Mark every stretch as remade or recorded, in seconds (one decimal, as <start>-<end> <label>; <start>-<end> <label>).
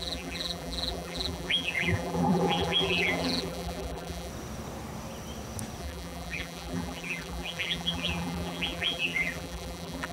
0.0-4.3 remade; 4.3-5.8 recorded; 5.8-10.1 remade